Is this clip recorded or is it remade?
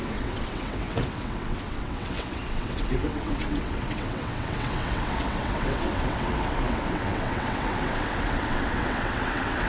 remade